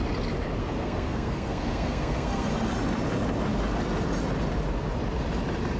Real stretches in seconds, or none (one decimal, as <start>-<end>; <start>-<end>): 0.0-0.6; 2.5-5.8